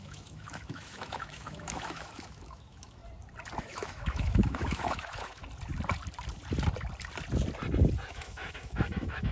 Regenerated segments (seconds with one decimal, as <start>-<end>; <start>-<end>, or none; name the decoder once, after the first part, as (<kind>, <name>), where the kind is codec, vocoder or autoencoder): 0.0-3.0 (autoencoder, DAC-VAE); 3.6-5.4; 8.1-9.3